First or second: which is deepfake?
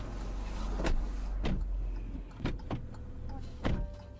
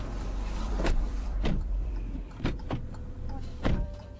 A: second